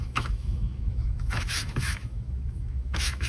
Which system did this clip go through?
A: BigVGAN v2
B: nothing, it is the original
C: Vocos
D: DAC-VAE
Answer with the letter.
D